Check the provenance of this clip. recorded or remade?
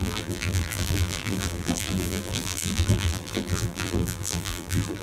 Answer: remade